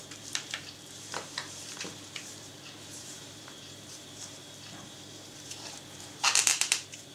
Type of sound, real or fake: fake